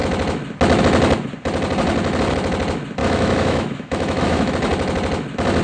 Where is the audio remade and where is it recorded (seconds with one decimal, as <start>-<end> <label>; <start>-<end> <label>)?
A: 0.0-3.0 recorded; 3.0-4.5 remade; 4.5-5.6 recorded